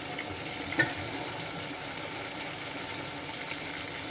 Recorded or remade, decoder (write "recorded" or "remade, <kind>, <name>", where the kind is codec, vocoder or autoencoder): recorded